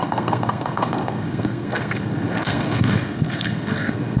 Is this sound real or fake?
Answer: fake